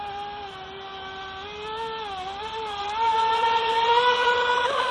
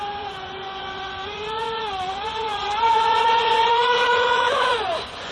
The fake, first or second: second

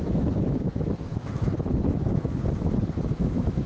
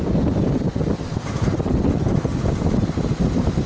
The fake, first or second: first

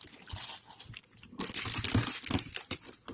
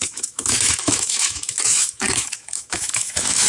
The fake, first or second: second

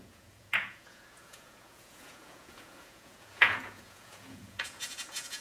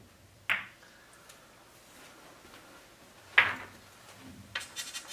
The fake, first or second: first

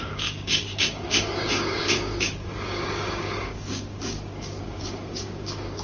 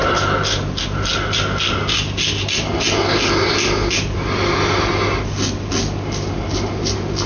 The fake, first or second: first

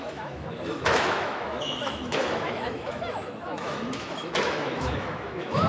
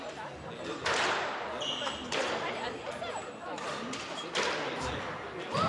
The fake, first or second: first